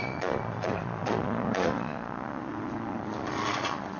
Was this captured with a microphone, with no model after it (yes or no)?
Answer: no